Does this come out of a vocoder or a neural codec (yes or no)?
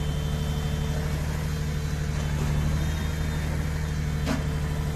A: no